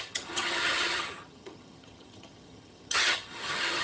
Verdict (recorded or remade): remade